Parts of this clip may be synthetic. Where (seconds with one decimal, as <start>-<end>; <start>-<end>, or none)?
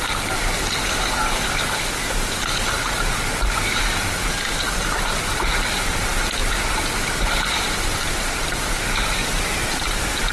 6.4-8.4; 9.2-10.3